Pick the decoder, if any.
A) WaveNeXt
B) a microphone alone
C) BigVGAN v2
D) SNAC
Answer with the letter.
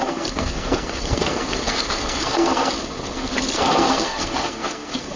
D